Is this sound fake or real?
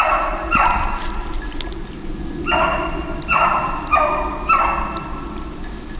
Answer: real